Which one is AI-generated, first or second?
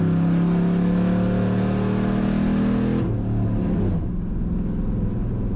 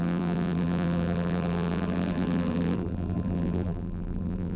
second